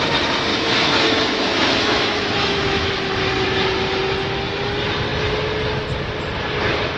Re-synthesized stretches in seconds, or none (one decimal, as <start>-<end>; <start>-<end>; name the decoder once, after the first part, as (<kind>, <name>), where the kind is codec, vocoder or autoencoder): 0.5-2.9 (autoencoder, DAC-VAE)

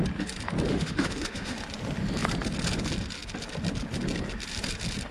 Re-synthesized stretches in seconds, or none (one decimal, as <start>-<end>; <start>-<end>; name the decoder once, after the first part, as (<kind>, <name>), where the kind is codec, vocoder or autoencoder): 0.7-1.6 (autoencoder, DAC-VAE)

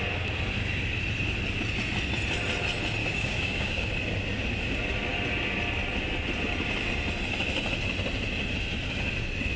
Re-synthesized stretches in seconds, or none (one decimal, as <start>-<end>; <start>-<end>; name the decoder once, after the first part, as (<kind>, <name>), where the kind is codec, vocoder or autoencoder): 3.0-3.9 (codec, DAC)

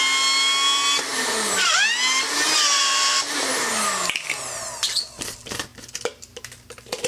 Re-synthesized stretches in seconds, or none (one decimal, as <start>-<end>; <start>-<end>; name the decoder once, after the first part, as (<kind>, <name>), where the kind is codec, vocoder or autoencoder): 1.1-1.7 (vocoder, BigVGAN v2); 2.8-3.3